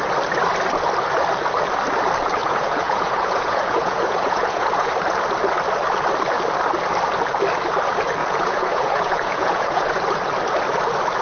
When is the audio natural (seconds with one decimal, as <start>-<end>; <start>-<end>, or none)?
0.0-2.4; 4.9-8.2; 10.0-11.2